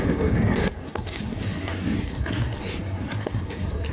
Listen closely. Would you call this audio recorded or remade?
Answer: remade